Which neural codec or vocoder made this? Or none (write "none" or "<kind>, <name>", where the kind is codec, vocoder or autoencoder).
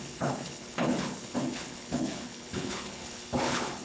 codec, HILCodec